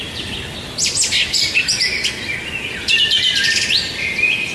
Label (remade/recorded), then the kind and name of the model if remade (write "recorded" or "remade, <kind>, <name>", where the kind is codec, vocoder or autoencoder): recorded